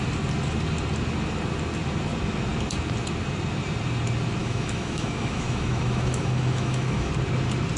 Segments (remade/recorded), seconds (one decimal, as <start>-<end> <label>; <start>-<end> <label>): 0.0-4.4 recorded; 4.4-7.1 remade; 7.1-7.8 recorded